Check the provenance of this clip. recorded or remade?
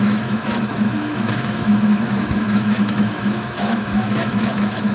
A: remade